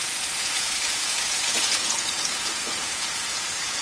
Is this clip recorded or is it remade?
remade